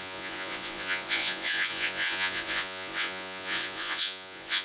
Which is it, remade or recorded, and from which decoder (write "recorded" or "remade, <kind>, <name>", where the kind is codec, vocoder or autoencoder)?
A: remade, vocoder, Vocos